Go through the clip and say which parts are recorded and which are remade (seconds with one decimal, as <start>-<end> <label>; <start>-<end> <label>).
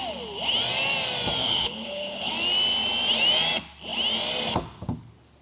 0.0-1.4 recorded; 1.4-2.3 remade; 2.3-5.4 recorded